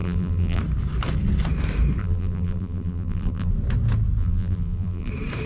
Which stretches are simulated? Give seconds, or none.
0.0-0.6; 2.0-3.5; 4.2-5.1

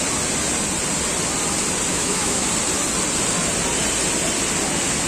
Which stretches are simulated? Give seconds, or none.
1.9-2.5

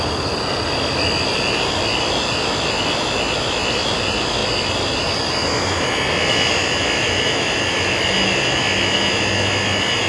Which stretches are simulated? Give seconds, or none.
none

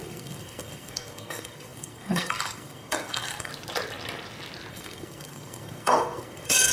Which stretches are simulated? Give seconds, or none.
0.0-3.5; 4.7-6.7